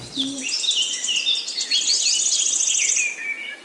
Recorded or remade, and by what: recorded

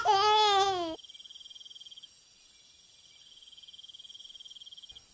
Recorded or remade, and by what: recorded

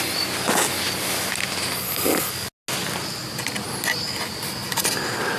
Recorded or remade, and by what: recorded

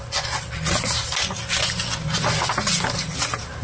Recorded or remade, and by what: recorded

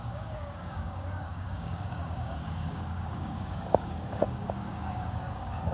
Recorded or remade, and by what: remade, codec, DAC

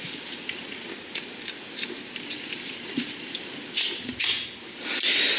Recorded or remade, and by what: recorded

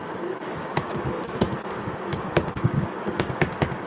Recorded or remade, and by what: remade, codec, DAC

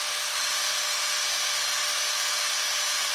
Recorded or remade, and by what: recorded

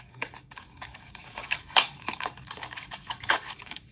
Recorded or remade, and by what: remade, codec, DAC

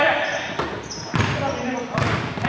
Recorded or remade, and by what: recorded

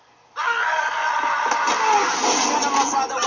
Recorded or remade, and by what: recorded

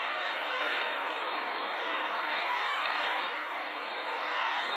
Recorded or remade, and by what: remade, codec, DAC